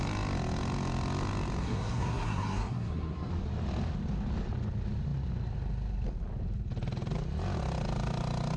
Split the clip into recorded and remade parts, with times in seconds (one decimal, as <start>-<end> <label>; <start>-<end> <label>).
0.0-1.6 recorded; 1.6-3.3 remade; 3.3-8.6 recorded